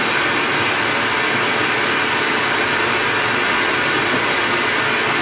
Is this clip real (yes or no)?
yes